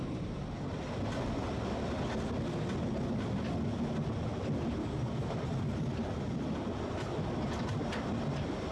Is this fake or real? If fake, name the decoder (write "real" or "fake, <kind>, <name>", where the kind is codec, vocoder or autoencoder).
real